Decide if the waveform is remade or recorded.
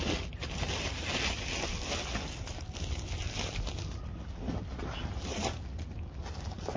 recorded